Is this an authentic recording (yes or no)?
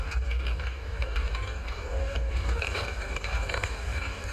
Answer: no